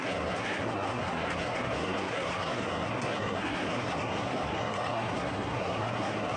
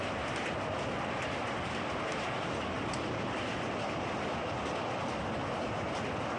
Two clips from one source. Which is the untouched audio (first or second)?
second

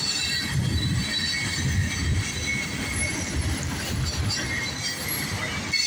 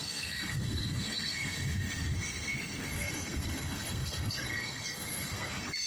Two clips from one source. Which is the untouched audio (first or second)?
first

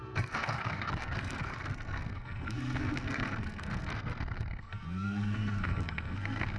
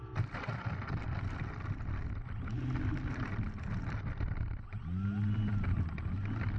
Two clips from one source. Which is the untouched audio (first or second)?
second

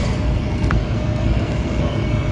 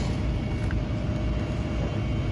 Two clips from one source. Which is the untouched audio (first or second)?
second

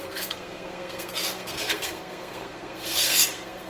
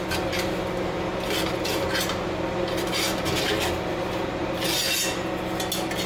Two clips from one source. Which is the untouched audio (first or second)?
second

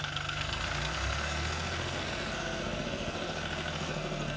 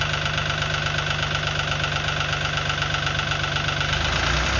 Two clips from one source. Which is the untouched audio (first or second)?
second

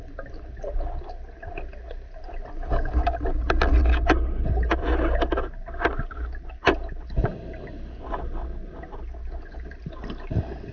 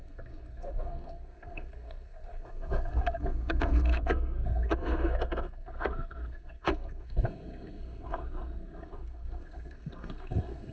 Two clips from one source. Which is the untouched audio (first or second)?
first